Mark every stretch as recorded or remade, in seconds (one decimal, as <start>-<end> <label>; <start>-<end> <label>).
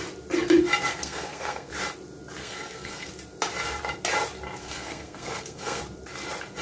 0.0-0.9 recorded; 0.9-1.7 remade; 1.7-2.4 recorded; 2.4-3.1 remade; 3.1-4.6 recorded; 4.6-5.8 remade; 5.8-6.6 recorded